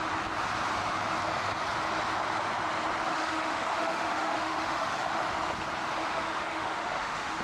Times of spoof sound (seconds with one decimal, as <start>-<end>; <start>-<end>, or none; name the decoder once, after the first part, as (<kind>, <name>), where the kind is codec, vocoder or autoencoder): 3.1-5.2 (autoencoder, DAC-VAE); 6.0-7.4